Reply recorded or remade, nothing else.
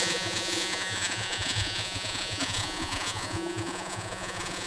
remade